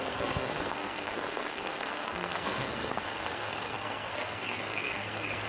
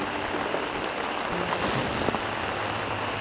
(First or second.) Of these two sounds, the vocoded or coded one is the first